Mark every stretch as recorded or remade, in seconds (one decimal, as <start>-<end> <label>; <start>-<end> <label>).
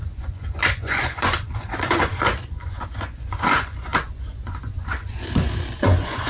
0.0-6.3 remade